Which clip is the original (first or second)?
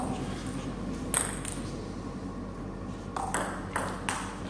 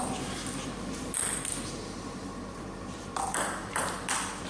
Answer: first